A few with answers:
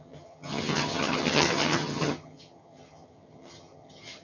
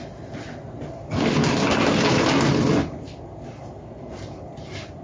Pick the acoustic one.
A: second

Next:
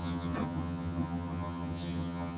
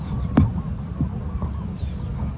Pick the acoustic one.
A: second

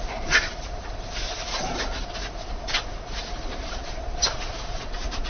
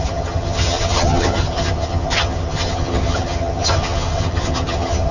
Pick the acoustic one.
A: first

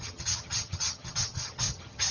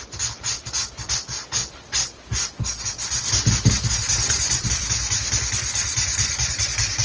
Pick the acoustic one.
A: second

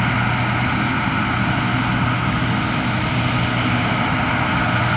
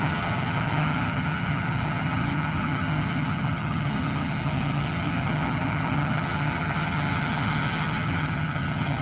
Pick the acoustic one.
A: first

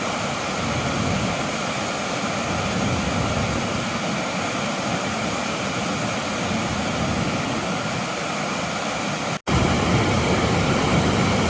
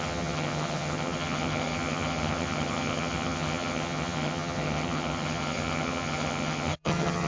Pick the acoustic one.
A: first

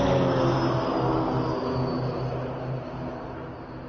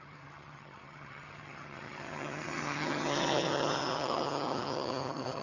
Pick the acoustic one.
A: first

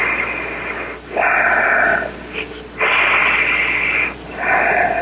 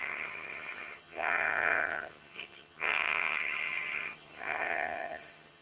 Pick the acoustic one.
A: first